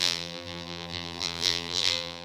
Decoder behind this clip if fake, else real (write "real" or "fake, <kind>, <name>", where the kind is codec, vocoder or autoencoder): fake, vocoder, BigVGAN v2